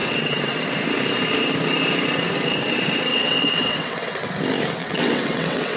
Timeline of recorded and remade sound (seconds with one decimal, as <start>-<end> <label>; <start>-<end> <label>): 0.0-0.6 remade; 0.6-3.1 recorded; 3.1-4.3 remade; 4.3-4.8 recorded; 4.8-5.8 remade